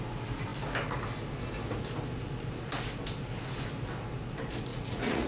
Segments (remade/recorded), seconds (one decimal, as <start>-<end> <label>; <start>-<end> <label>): 0.0-4.7 recorded; 4.7-5.3 remade